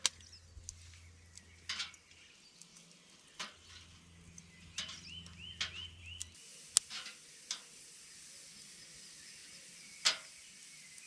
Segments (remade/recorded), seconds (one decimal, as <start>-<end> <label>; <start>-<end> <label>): 0.0-11.1 recorded